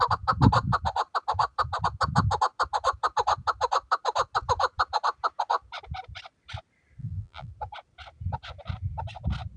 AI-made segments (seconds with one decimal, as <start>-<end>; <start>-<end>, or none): 7.0-7.5